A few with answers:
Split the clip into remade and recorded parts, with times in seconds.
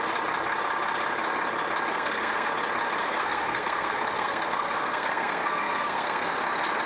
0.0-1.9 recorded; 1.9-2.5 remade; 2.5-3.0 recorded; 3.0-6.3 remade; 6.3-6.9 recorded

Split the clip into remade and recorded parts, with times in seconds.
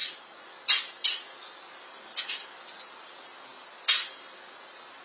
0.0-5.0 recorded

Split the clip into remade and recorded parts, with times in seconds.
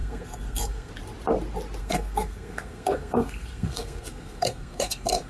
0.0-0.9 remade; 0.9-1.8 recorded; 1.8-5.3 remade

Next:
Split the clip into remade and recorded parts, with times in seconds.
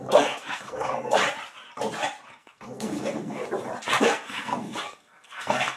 0.0-1.2 remade; 1.2-2.3 recorded; 2.3-3.4 remade; 3.4-4.0 recorded; 4.0-5.8 remade